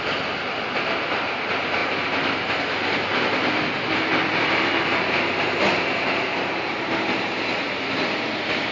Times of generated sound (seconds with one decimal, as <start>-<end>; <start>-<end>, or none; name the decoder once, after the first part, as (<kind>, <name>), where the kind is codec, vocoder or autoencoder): 4.2-6.7 (vocoder, BigVGAN v2)

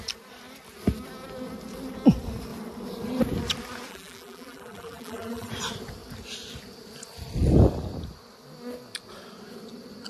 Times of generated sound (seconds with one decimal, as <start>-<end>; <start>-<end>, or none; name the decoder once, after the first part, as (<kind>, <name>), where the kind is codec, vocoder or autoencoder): 3.9-5.5 (vocoder, BigVGAN v2)

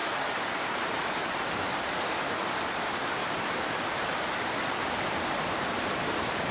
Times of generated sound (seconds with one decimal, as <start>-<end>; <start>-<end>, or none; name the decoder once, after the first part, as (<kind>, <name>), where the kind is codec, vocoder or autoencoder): 0.0-1.4 (vocoder, BigVGAN v2); 3.2-6.0